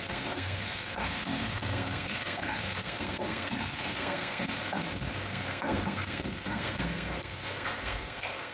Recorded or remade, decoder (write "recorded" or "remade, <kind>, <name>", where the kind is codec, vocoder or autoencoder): remade, codec, SNAC